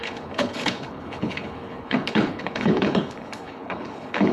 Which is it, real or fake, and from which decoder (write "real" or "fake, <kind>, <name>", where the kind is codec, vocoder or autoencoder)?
fake, codec, HILCodec